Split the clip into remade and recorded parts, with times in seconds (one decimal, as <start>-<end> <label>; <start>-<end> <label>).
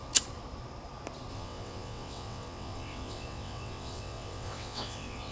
0.0-1.3 recorded; 1.3-5.3 remade